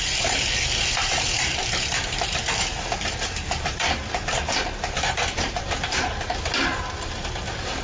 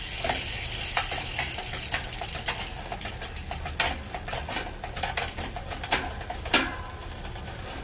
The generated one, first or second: first